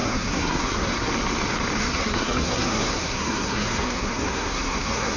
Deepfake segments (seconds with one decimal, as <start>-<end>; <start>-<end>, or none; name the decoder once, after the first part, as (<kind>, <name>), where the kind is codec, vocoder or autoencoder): 0.0-1.1 (codec, SNAC); 1.8-5.2